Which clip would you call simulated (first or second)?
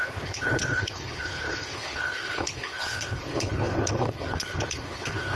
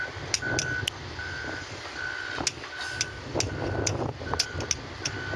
first